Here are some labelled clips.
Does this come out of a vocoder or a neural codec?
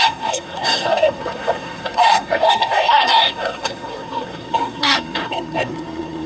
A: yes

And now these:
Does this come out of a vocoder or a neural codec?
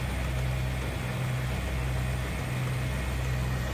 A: no